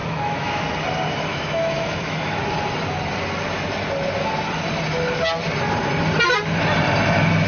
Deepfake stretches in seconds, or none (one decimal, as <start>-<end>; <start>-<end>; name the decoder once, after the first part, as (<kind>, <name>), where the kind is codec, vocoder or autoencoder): 0.0-0.6 (autoencoder, DAC-VAE); 1.3-2.4